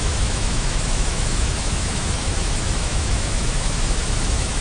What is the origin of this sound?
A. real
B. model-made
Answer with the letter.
B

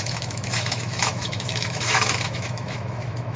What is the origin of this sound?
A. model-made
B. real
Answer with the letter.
A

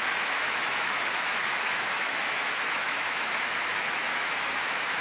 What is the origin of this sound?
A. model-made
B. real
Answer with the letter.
A